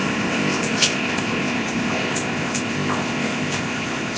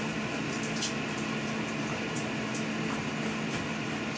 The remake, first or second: first